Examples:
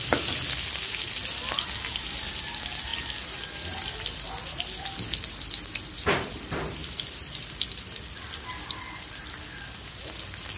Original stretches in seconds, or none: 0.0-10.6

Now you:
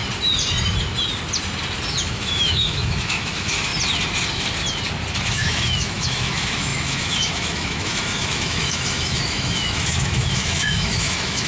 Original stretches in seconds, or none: 0.0-2.0; 3.7-5.2

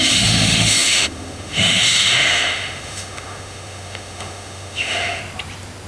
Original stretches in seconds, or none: 5.2-5.9

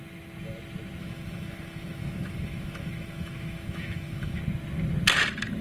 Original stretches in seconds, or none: 0.0-1.0; 4.4-5.6

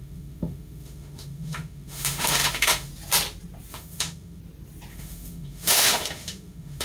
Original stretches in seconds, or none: 2.9-3.7; 4.4-4.9

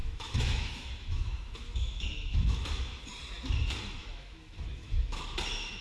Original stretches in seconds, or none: 3.0-4.0; 5.2-5.8

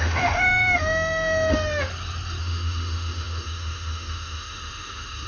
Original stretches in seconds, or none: 1.9-2.4

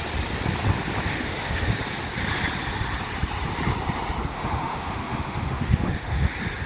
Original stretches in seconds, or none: 0.0-1.1; 1.8-4.3; 6.3-6.7